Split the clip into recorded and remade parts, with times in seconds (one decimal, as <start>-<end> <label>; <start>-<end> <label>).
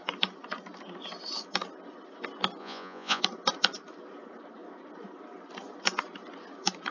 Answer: 0.0-2.6 recorded; 2.6-3.2 remade; 3.2-6.9 recorded